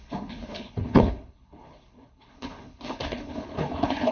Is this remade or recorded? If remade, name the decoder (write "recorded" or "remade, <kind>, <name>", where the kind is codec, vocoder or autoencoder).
remade, codec, HILCodec